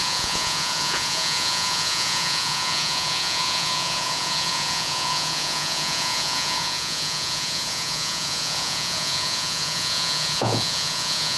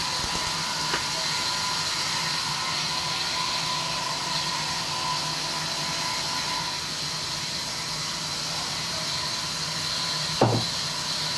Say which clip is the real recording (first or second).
second